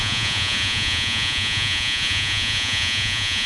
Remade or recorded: remade